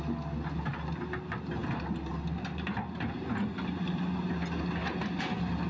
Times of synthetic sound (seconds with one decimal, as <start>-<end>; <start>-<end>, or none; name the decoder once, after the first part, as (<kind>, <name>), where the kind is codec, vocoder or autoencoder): none